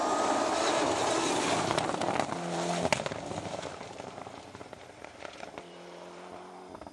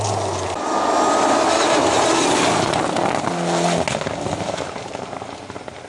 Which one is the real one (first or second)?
second